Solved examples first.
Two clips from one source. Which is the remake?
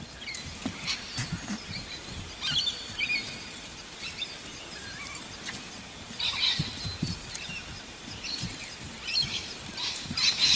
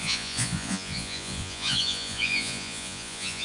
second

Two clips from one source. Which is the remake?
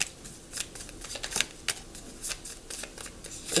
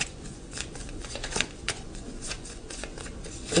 second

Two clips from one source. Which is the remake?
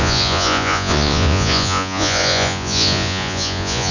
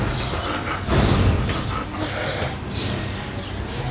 first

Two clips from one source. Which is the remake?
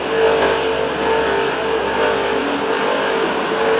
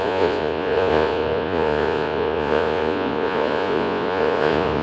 second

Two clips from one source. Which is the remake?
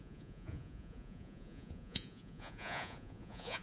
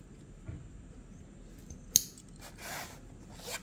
first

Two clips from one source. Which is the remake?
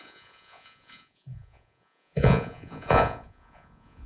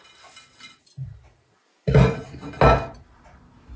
first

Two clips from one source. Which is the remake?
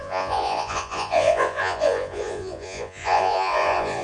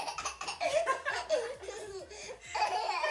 first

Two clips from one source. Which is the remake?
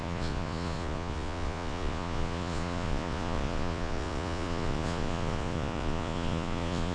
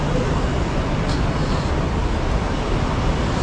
first